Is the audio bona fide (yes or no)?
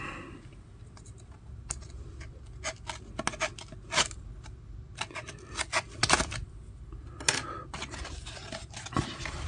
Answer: yes